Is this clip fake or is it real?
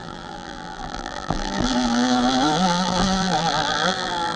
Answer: fake